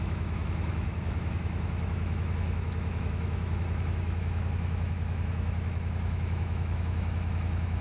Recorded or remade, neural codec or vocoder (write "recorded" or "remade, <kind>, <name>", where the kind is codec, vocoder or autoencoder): remade, autoencoder, DAC-VAE